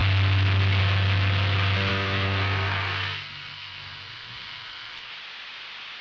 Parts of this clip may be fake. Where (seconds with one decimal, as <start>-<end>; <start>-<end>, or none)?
1.9-5.1